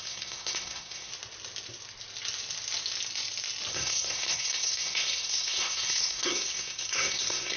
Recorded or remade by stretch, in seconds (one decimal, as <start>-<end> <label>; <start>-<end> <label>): 0.0-1.1 remade; 1.1-3.7 recorded; 3.7-7.6 remade